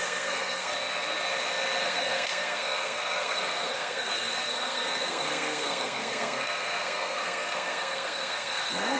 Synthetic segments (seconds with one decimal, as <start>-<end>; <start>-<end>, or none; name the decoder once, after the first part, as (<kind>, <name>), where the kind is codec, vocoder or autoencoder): 0.0-0.7 (codec, SNAC); 1.8-9.0